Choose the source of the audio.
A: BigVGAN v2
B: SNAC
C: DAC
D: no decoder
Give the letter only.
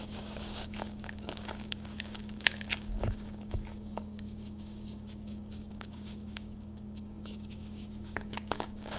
C